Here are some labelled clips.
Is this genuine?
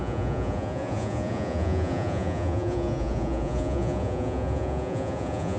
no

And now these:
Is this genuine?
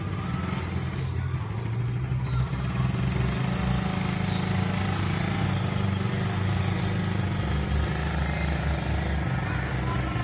yes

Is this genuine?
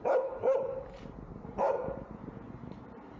no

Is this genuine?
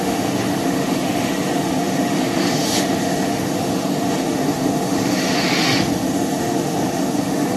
no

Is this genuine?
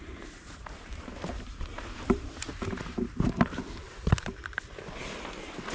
no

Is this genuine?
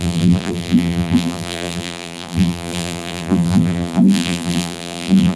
no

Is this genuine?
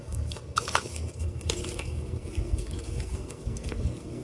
no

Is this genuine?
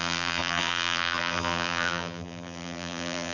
no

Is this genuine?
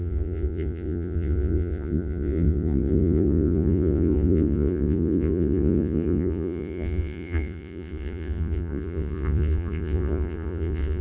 no